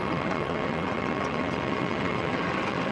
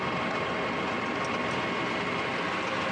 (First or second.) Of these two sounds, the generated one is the first